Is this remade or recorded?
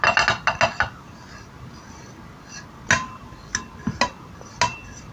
recorded